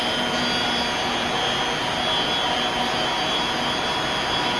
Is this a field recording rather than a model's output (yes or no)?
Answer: yes